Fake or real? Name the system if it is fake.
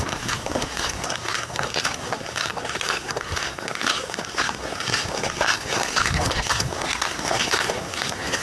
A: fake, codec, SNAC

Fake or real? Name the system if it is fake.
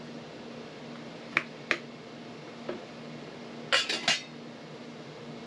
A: real